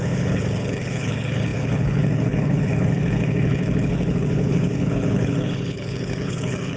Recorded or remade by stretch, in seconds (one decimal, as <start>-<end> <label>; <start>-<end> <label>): 0.0-6.8 remade